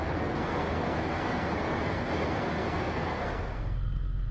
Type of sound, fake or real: fake